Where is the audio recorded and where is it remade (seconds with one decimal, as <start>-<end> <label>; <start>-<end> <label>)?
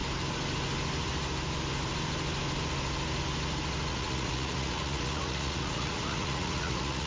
0.0-3.9 recorded; 3.9-7.1 remade